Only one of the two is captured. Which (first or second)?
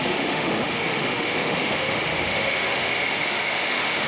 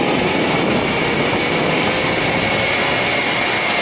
second